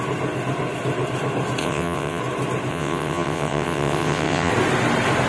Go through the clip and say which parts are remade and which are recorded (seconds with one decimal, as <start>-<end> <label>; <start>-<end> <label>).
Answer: 0.0-1.6 recorded; 1.6-2.2 remade; 2.2-2.7 recorded; 2.7-4.5 remade; 4.5-5.3 recorded